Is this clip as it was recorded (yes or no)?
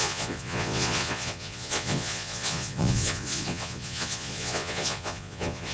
no